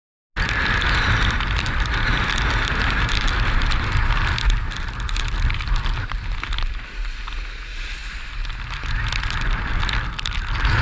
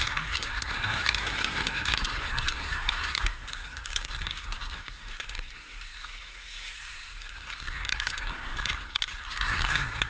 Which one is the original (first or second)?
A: first